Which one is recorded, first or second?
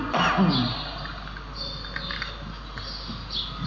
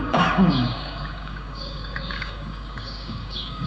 first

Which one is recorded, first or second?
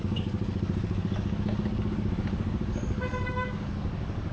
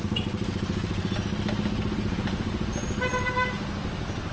second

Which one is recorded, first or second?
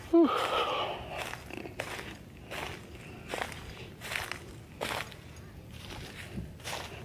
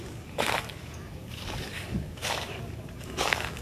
first